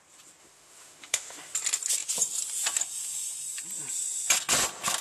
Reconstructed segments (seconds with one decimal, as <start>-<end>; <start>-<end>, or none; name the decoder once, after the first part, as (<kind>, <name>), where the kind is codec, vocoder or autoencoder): 0.4-1.4 (autoencoder, DAC-VAE)